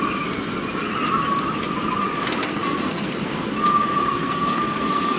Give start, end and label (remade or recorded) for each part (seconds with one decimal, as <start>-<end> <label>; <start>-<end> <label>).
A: 0.0-2.4 recorded; 2.4-3.5 remade; 3.5-4.0 recorded; 4.0-5.2 remade